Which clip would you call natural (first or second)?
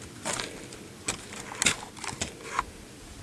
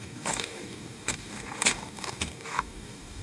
first